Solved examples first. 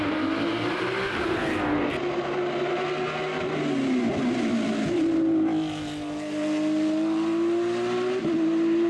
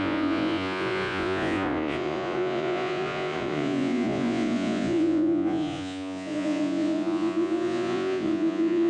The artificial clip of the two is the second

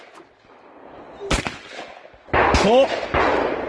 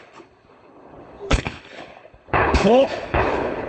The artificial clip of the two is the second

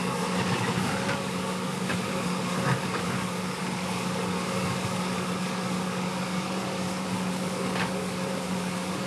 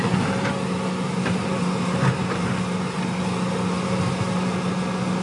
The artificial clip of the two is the first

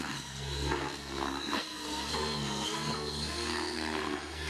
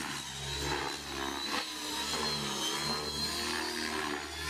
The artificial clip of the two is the first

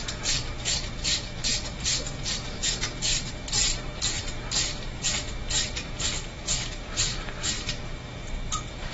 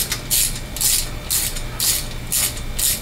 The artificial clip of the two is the first